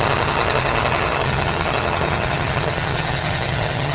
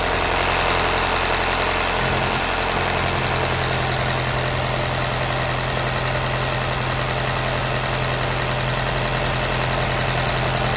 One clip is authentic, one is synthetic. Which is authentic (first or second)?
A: second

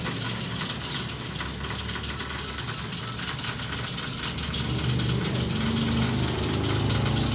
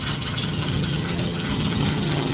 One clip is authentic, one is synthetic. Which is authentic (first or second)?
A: first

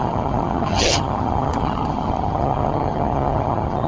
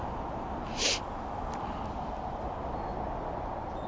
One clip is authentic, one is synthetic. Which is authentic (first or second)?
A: second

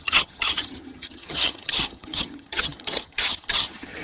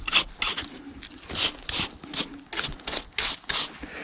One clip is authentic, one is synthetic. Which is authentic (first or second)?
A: second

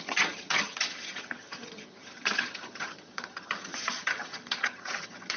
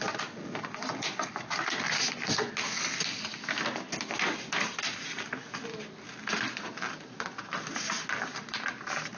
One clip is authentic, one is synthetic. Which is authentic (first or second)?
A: second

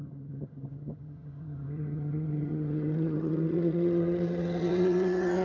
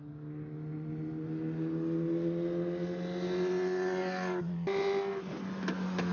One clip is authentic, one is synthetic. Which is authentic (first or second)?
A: second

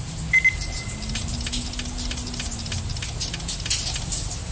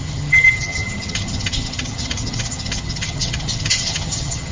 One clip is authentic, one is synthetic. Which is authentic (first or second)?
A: first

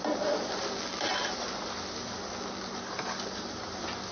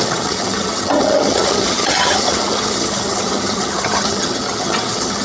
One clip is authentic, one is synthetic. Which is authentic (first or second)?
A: first